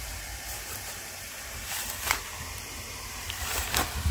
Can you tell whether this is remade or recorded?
remade